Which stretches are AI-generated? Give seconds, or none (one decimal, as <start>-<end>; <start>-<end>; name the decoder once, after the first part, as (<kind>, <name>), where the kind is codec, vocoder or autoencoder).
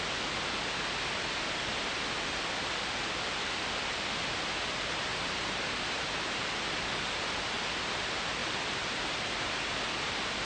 5.1-6.7 (vocoder, BigVGAN v2); 8.4-9.2